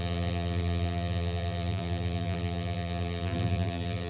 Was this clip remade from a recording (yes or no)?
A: yes